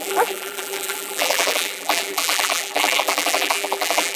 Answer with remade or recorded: remade